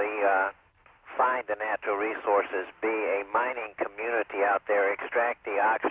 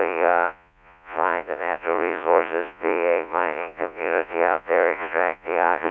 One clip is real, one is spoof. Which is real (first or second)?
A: first